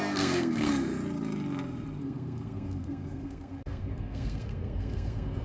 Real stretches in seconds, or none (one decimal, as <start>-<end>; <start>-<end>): 0.9-2.0